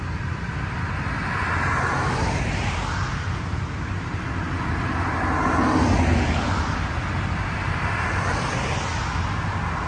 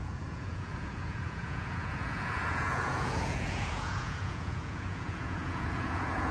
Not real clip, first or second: second